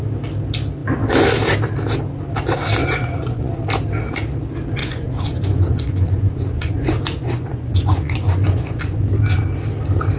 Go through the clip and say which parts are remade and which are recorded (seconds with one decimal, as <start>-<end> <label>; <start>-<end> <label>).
0.0-2.8 recorded; 2.8-3.5 remade; 3.5-4.8 recorded; 4.8-9.0 remade; 9.0-10.2 recorded